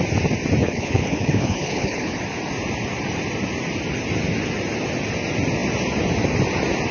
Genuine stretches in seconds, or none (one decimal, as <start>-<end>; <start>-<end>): 0.0-0.6; 2.2-6.9